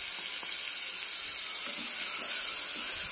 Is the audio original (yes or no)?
yes